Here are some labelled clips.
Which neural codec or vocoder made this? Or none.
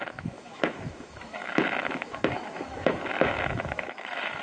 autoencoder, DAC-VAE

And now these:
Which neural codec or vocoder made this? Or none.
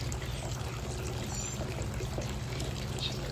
none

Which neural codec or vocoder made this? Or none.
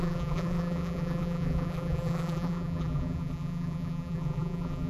vocoder, BigVGAN v2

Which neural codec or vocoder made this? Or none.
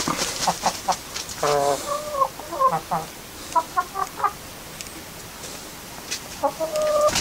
none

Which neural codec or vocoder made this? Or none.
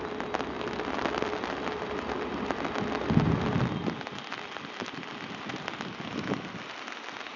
none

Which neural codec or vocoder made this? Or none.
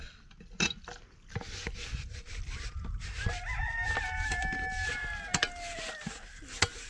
none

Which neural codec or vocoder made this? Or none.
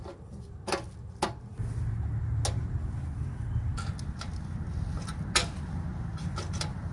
none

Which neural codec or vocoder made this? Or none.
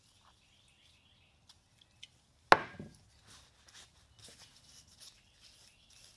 none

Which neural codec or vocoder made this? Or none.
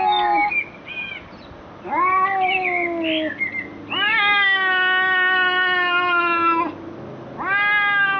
none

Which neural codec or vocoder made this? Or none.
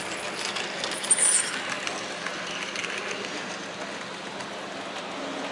none